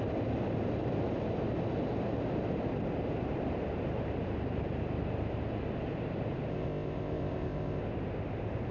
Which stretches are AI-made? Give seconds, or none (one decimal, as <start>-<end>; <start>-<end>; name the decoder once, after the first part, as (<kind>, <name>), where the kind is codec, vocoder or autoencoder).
6.5-7.8 (codec, ZipCodec)